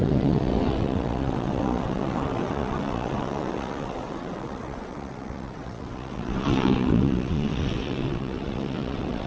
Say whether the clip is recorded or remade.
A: remade